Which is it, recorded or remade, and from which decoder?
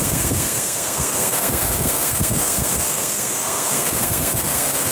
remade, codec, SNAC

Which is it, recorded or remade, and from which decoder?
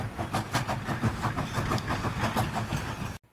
recorded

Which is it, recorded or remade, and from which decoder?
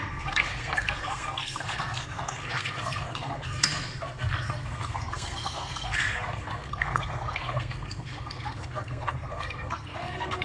remade, codec, SNAC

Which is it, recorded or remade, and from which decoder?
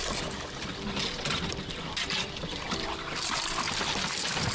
recorded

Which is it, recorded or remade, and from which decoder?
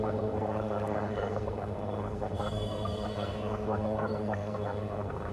remade, codec, SNAC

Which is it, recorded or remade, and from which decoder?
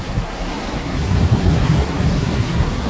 remade, codec, SNAC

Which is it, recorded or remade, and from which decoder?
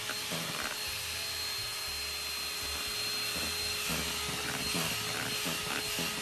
recorded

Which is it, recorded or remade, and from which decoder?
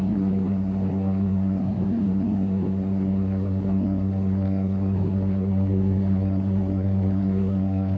remade, codec, SNAC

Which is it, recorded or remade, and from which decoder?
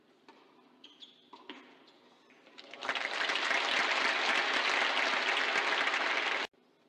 recorded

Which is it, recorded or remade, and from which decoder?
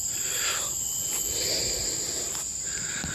recorded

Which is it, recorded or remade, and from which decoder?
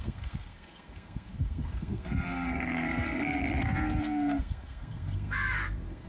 remade, codec, SNAC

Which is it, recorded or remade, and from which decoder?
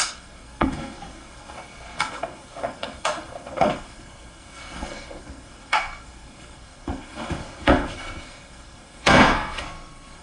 remade, codec, SNAC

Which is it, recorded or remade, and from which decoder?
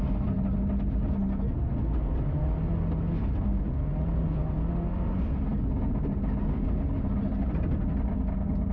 recorded